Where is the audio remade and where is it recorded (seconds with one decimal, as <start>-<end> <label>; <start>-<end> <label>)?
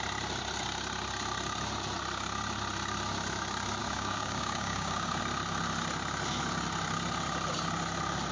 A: 0.0-3.8 recorded; 3.8-5.2 remade; 5.2-8.3 recorded